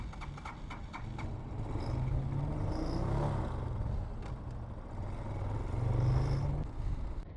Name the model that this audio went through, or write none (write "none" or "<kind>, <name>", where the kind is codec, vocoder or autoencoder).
none